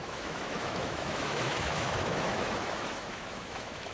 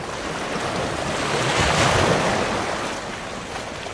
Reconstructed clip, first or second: first